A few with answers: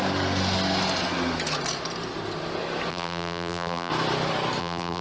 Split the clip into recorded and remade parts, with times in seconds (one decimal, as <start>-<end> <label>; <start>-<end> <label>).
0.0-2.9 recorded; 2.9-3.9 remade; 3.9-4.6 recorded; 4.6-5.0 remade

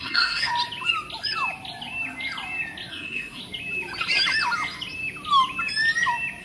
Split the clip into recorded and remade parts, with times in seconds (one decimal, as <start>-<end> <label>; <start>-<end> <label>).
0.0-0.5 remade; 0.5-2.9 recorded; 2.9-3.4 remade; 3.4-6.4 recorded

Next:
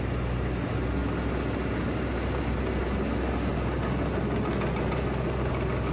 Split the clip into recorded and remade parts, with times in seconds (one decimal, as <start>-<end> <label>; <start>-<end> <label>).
0.0-5.9 recorded